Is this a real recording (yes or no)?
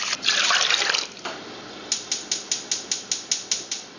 yes